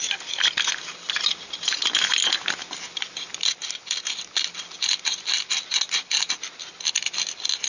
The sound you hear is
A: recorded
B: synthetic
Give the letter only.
A